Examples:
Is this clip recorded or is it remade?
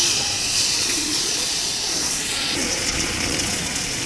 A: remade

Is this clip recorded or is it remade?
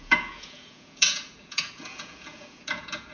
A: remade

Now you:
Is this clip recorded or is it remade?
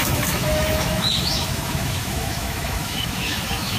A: remade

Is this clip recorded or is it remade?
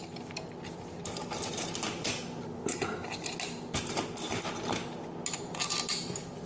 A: recorded